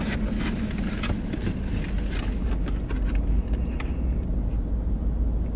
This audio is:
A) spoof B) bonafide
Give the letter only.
B